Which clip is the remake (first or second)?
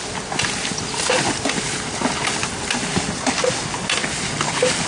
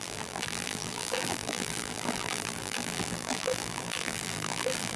second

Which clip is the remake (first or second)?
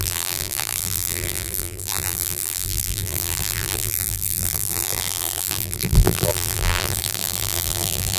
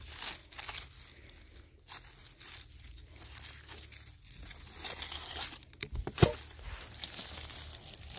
first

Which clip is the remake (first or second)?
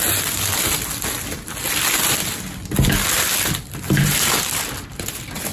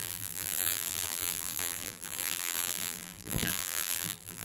second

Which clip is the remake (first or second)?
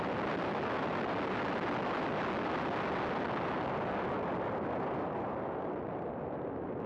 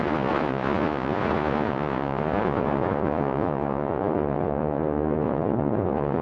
second